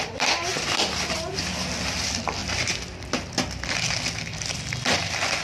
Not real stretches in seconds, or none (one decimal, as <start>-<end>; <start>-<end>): 0.0-2.4; 4.9-5.4

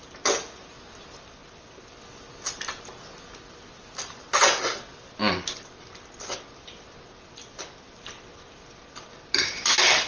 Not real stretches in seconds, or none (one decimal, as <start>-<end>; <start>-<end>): none